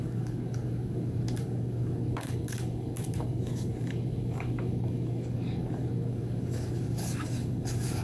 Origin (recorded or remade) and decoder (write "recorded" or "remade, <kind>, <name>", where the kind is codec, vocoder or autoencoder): remade, codec, DAC